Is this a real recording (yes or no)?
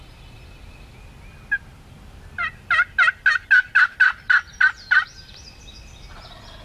yes